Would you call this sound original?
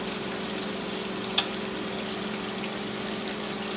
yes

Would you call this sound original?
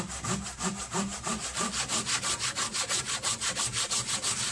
yes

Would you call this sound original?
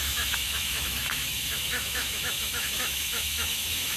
no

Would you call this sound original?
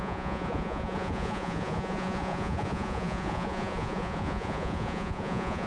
no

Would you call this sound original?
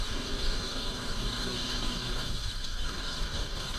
no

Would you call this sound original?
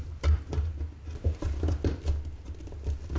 yes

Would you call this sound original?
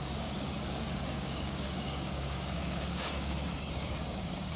no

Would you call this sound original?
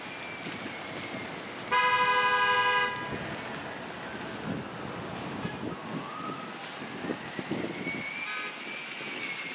yes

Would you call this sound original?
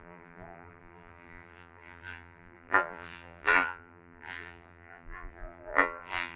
no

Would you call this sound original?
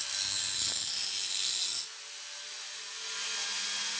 yes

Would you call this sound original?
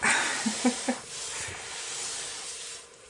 yes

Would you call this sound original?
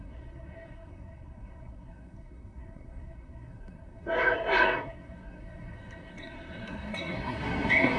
no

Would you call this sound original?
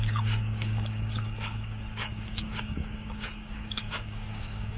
no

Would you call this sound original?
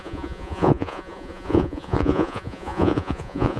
no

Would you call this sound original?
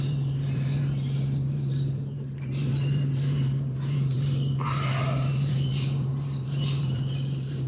no